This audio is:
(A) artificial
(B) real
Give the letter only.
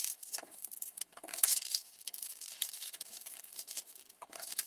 A